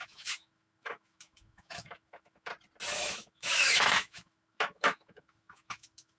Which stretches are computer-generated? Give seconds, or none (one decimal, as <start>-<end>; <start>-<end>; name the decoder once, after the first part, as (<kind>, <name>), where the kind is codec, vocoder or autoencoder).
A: 0.0-2.5 (autoencoder, DAC-VAE); 3.0-6.2